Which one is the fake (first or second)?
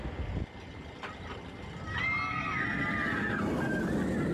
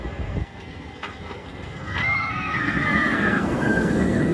second